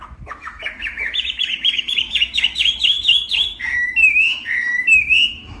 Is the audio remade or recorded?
remade